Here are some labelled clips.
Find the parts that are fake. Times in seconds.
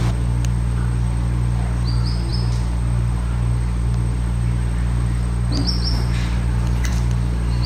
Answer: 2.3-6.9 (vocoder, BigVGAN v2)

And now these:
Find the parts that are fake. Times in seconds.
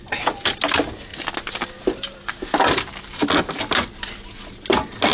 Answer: none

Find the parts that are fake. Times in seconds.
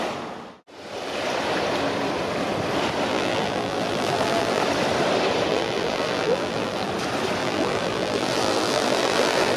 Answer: 3.1-4.6 (vocoder, BigVGAN v2); 5.5-6.9; 7.4-9.6